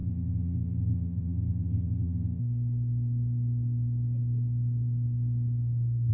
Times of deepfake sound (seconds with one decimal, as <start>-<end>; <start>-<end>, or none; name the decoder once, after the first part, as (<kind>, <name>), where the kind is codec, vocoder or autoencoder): 0.0-2.4 (vocoder, BigVGAN v2)